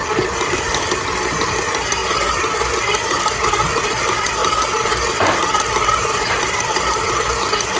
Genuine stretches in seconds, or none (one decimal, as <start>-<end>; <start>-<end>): 2.0-3.8; 4.4-5.1